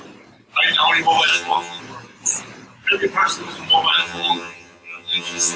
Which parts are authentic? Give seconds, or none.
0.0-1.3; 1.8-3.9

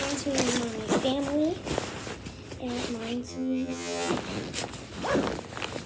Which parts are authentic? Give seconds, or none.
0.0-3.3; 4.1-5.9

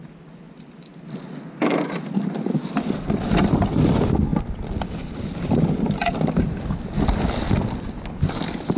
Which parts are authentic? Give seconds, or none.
0.0-8.8

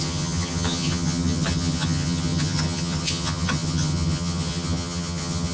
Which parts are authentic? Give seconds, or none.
none

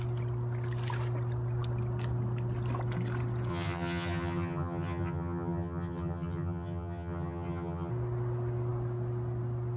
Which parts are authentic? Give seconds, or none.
0.0-3.5; 7.9-9.8

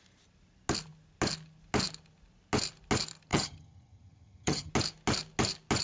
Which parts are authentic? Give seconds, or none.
0.0-3.3; 4.7-5.8

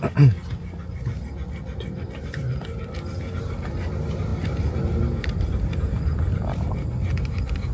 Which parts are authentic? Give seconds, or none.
0.0-7.7

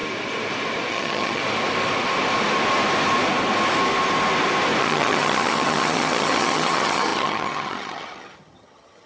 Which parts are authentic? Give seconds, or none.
0.0-0.9; 1.4-4.8